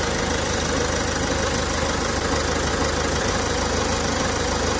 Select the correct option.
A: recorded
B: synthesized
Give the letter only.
A